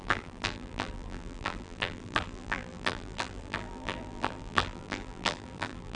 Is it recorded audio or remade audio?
remade